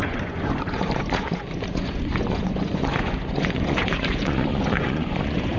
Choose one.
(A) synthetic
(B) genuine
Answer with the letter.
A